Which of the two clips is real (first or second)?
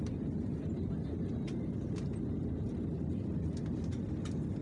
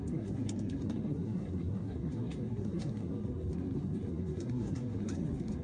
first